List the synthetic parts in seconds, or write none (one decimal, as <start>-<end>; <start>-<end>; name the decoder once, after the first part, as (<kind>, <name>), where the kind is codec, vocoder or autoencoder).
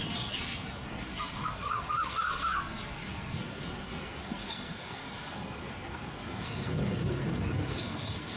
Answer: 0.0-8.4 (codec, SNAC)